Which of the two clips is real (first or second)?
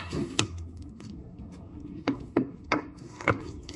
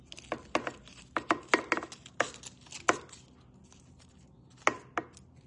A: second